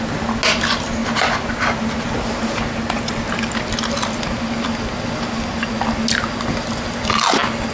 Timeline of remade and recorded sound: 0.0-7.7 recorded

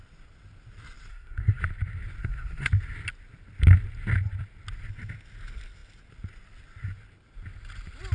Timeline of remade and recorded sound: 0.0-1.1 recorded; 1.1-1.6 remade; 1.6-2.2 recorded; 2.2-2.7 remade; 2.7-8.1 recorded

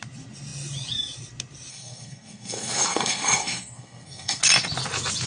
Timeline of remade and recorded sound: 0.0-1.7 recorded; 1.7-4.4 remade; 4.4-5.3 recorded

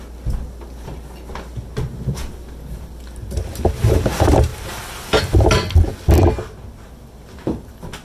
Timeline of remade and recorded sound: 0.0-8.0 recorded

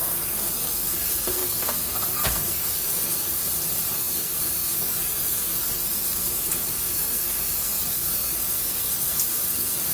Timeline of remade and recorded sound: 0.0-3.4 remade; 3.4-3.9 recorded; 3.9-9.9 remade

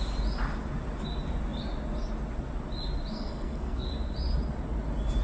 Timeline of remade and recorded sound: 0.0-3.1 recorded; 3.1-3.9 remade; 3.9-5.2 recorded

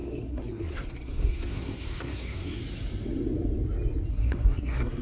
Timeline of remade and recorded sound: 0.0-2.6 remade; 2.6-4.1 recorded; 4.1-5.0 remade

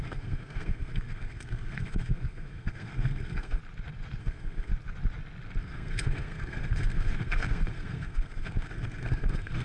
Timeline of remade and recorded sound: 0.0-3.6 remade; 3.6-4.2 recorded; 4.2-4.7 remade; 4.7-5.6 recorded; 5.6-9.6 remade